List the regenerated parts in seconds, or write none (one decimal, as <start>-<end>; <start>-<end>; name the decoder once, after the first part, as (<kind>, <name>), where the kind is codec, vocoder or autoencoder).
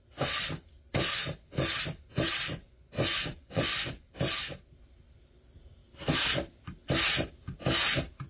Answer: 2.5-4.1 (vocoder, Vocos)